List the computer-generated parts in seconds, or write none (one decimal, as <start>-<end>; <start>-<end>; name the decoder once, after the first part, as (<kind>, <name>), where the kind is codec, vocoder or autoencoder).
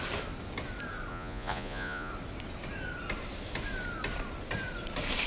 1.1-2.1 (vocoder, Vocos)